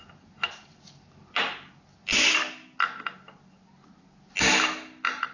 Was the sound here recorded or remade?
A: recorded